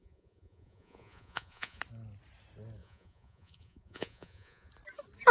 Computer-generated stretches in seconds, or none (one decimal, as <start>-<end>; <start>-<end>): 0.0-1.8; 2.8-4.7